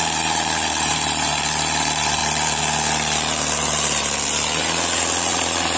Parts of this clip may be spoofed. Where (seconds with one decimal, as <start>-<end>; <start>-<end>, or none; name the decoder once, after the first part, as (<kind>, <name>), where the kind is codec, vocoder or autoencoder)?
0.0-2.2 (vocoder, BigVGAN v2); 5.3-5.8